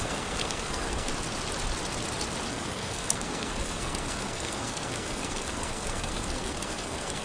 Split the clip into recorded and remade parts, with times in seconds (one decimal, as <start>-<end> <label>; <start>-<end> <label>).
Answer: 0.0-1.1 remade; 1.1-2.5 recorded; 2.5-7.2 remade